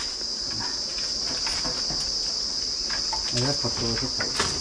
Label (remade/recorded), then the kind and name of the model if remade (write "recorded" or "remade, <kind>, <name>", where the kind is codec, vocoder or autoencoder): recorded